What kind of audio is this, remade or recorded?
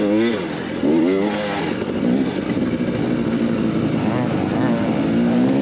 recorded